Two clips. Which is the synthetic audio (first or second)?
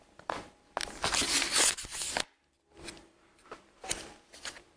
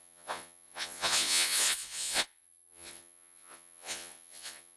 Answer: second